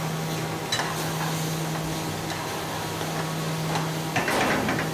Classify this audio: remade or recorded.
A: recorded